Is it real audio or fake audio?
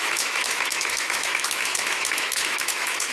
fake